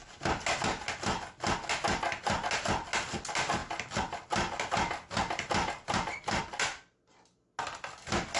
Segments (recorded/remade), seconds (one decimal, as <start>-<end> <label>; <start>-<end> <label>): 0.0-8.4 recorded